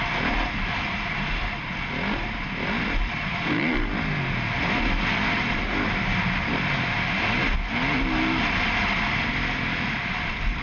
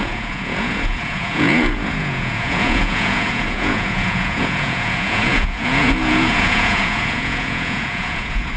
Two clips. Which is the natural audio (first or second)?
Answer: first